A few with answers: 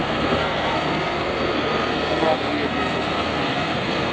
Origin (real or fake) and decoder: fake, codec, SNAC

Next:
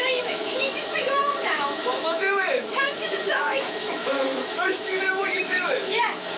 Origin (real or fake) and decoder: fake, autoencoder, DAC-VAE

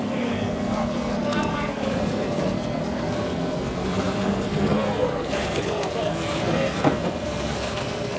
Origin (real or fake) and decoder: fake, codec, SNAC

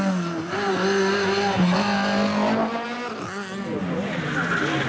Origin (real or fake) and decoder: real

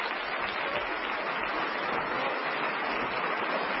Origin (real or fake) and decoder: real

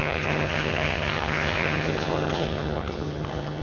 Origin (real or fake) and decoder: fake, vocoder, HiFi-GAN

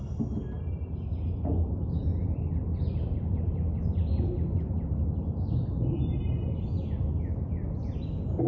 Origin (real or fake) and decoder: real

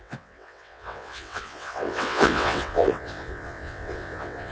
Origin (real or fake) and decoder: fake, vocoder, WaveNeXt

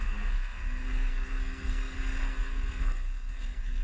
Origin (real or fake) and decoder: fake, codec, SNAC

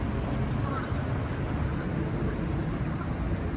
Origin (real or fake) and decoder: real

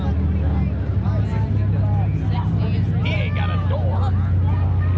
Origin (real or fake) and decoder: real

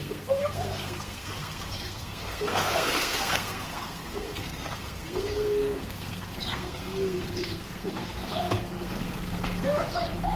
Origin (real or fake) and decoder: fake, codec, SNAC